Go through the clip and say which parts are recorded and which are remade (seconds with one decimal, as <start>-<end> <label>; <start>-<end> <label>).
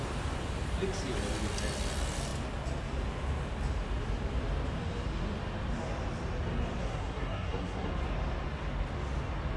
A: 0.0-6.8 recorded; 6.8-7.9 remade; 7.9-9.6 recorded